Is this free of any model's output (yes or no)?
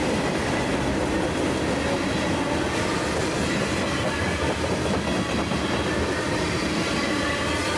yes